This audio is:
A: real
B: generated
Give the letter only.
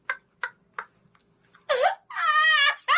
A